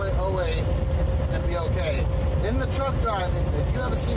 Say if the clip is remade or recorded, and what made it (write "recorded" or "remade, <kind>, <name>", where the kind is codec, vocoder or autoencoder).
recorded